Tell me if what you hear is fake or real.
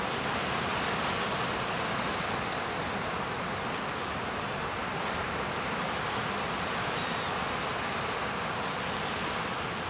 real